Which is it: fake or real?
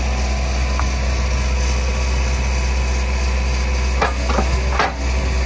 real